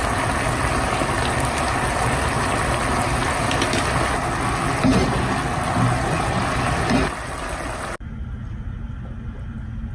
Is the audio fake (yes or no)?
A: no